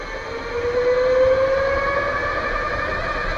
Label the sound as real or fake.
real